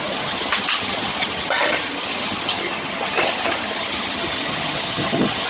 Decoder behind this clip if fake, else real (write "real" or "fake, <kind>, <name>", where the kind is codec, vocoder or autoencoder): fake, vocoder, HiFi-GAN